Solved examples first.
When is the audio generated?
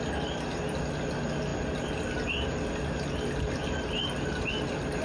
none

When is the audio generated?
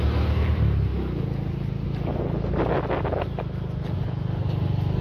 none